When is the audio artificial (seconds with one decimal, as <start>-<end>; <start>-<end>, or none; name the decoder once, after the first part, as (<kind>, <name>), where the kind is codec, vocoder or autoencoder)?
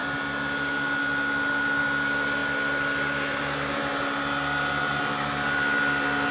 none